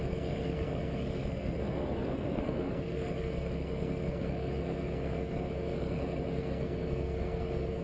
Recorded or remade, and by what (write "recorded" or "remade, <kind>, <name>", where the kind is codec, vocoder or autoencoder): remade, codec, SNAC